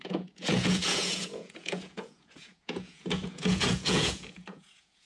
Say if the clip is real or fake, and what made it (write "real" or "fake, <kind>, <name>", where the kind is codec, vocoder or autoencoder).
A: fake, vocoder, Vocos